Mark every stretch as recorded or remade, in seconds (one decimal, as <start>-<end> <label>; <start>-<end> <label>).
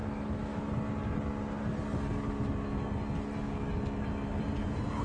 0.0-0.6 remade; 0.6-5.0 recorded